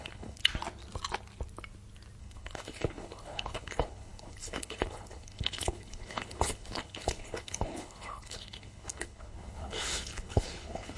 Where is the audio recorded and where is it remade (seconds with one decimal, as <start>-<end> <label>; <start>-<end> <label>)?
0.0-0.4 remade; 0.4-2.2 recorded; 2.2-11.0 remade